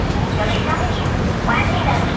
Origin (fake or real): real